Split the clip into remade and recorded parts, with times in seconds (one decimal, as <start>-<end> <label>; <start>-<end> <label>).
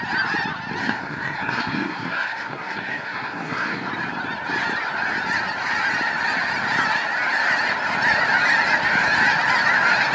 0.0-0.8 recorded; 0.8-3.9 remade; 3.9-10.1 recorded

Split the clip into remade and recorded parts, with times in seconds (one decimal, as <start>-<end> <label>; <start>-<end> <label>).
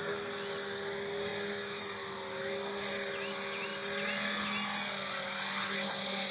0.0-6.3 recorded